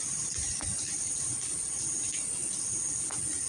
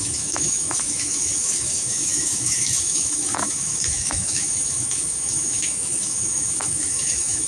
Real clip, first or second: first